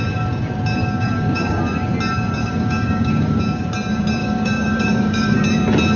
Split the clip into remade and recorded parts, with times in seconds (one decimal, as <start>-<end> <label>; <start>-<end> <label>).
0.0-0.8 recorded; 0.8-1.6 remade; 1.6-2.4 recorded; 2.4-3.4 remade; 3.4-4.2 recorded; 4.2-5.4 remade; 5.4-6.0 recorded